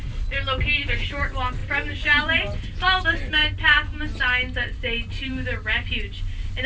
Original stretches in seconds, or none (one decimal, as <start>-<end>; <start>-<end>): 0.0-6.7